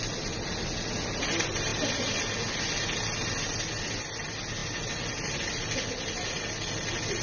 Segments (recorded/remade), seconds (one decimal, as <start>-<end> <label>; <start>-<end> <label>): 0.0-7.2 recorded